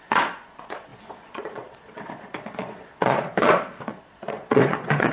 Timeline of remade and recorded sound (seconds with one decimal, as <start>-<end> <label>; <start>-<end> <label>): 0.0-5.1 remade